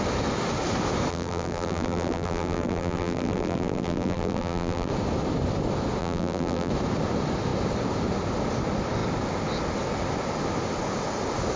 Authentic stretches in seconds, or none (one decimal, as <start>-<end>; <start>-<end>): 0.0-1.1; 4.9-6.0; 6.7-11.6